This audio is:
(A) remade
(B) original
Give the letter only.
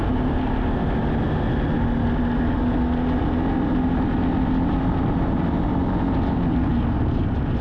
B